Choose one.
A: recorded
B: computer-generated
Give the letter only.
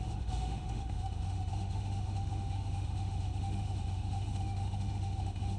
B